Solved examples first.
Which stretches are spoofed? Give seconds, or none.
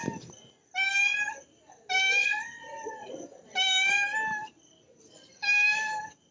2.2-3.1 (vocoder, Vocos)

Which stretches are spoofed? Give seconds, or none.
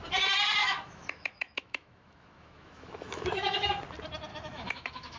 0.6-3.7 (autoencoder, DAC-VAE); 4.3-5.2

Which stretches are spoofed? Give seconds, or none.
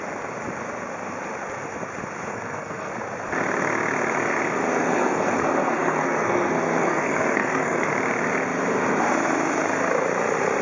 2.3-2.9 (codec, SNAC); 4.7-7.9